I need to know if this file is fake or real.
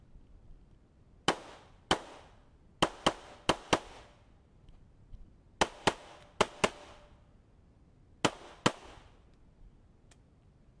real